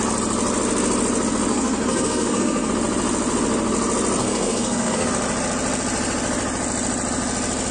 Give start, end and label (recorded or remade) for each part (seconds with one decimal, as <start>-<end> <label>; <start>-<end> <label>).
0.0-1.5 recorded; 1.5-2.7 remade; 2.7-4.2 recorded; 4.2-5.1 remade; 5.1-7.7 recorded